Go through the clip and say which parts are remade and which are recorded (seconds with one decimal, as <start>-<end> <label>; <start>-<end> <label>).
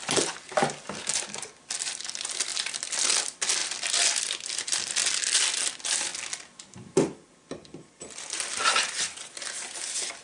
0.0-10.2 recorded